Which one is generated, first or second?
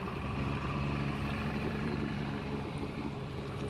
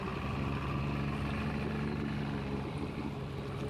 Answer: first